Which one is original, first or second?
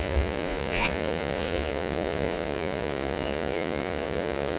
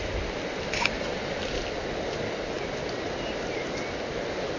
second